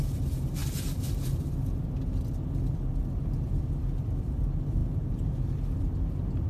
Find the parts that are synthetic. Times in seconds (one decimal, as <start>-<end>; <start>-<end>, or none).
none